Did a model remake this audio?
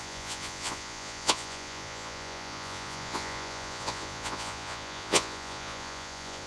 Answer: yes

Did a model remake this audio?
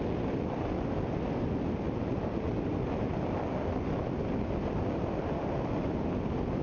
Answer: no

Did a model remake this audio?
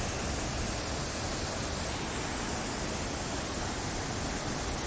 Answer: no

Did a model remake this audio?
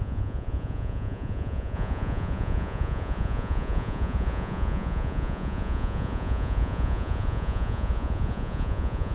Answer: yes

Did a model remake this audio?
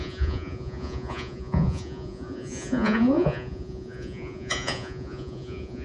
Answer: yes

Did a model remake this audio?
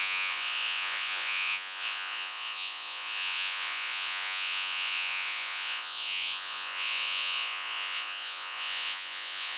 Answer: yes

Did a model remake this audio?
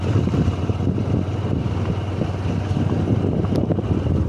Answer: no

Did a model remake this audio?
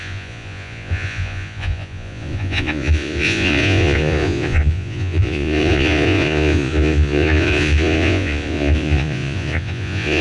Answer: yes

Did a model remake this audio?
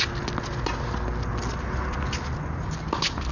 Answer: no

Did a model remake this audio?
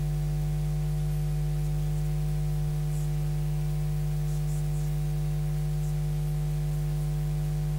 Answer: no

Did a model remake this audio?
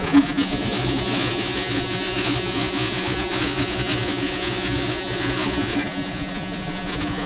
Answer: yes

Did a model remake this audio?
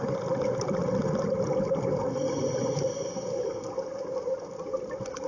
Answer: no